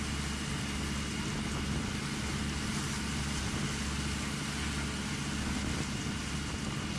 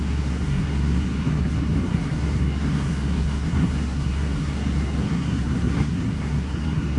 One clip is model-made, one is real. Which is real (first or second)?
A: first